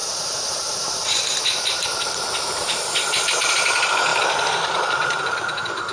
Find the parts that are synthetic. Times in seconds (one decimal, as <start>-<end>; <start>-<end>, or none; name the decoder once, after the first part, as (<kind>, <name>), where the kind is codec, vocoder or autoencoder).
0.0-3.5 (vocoder, BigVGAN v2); 4.1-5.2